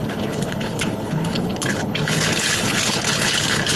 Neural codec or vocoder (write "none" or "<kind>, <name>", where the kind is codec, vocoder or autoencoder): codec, HILCodec